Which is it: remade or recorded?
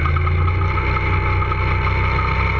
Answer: recorded